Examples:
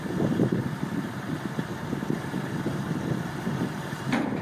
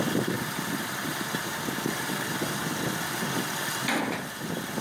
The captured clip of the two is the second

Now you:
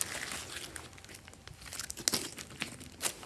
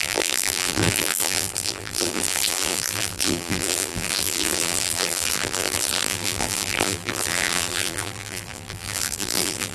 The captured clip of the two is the first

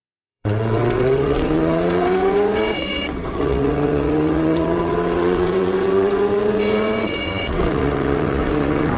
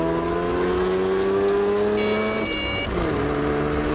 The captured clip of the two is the second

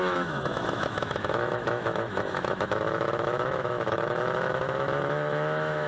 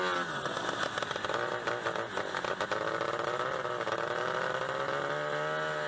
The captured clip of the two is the second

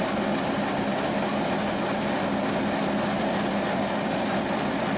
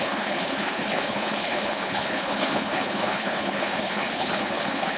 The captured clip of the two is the first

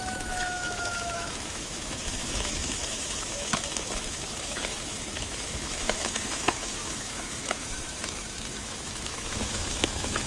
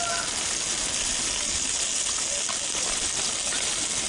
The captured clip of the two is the second